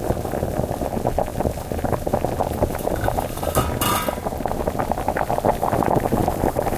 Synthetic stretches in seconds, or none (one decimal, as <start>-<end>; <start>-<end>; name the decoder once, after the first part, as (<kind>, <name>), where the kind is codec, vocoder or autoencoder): none